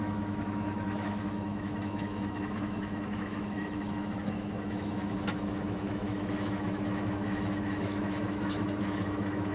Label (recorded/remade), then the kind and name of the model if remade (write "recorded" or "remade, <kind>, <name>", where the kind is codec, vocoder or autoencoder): remade, autoencoder, DAC-VAE